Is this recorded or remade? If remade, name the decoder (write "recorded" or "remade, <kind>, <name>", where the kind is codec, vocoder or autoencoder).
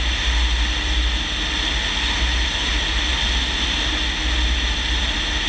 recorded